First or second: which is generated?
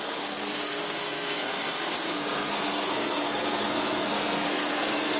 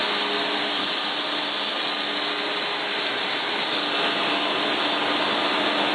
first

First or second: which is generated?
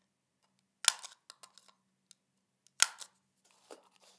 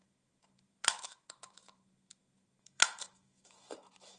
second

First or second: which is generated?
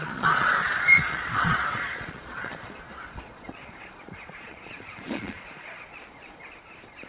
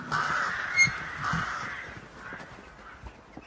first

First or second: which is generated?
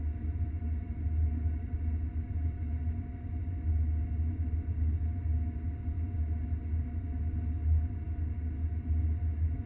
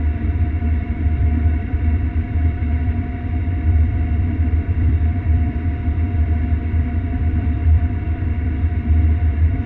second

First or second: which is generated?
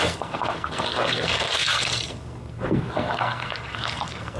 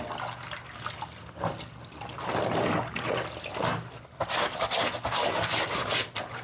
first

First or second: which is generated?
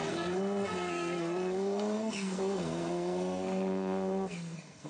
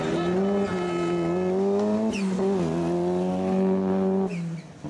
first